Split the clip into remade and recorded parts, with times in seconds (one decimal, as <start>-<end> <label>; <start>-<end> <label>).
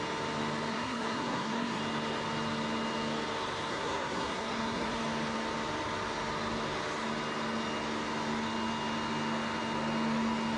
0.0-0.7 recorded; 0.7-1.8 remade; 1.8-3.7 recorded; 3.7-5.0 remade; 5.0-10.6 recorded